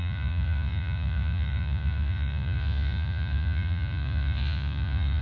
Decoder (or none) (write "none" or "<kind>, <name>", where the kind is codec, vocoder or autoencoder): vocoder, Vocos